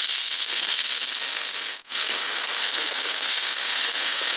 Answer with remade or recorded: remade